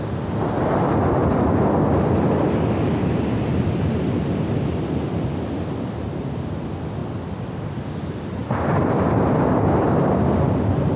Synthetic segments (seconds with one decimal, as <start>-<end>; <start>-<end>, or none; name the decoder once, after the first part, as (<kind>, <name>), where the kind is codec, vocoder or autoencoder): none

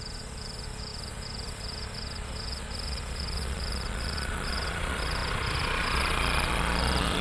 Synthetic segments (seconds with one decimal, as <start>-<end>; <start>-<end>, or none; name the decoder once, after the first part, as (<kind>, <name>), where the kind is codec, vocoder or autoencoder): 0.0-7.2 (vocoder, Vocos)

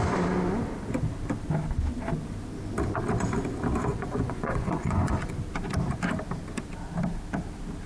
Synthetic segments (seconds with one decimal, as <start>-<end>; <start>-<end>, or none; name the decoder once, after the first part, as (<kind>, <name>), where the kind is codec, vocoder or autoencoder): 3.9-5.3 (vocoder, Vocos)

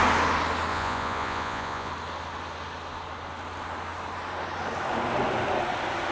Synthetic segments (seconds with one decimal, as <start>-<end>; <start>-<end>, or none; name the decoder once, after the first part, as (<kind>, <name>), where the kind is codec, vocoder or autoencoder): 0.7-1.9 (vocoder, Vocos)